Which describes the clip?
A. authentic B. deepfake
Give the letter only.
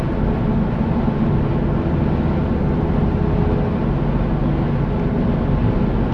A